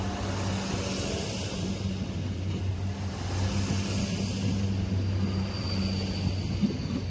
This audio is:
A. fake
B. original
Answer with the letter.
B